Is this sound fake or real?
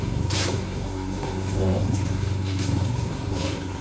fake